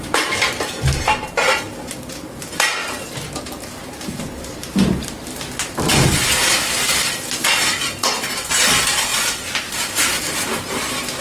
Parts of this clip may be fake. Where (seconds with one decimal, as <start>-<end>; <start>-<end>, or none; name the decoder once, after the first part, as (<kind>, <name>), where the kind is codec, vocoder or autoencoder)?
none

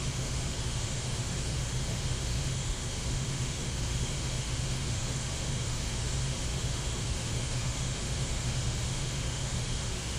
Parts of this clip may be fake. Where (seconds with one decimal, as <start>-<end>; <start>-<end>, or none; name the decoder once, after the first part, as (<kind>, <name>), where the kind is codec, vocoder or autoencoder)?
0.0-10.2 (autoencoder, DAC-VAE)

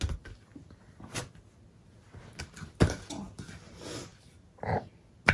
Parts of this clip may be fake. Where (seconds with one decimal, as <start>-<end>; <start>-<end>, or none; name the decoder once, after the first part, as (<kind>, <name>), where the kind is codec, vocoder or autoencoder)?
none

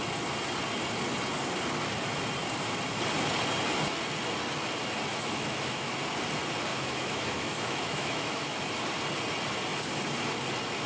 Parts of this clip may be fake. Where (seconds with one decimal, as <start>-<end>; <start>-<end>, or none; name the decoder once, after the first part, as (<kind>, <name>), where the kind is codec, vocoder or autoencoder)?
5.1-6.0 (autoencoder, DAC-VAE); 6.7-8.6